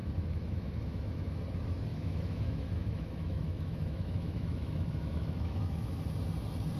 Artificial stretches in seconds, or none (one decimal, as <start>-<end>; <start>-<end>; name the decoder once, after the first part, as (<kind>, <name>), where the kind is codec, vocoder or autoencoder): 0.0-1.4 (autoencoder, DAC-VAE); 1.9-6.0